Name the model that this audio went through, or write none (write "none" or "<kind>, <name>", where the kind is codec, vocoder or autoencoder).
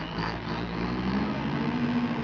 vocoder, BigVGAN v2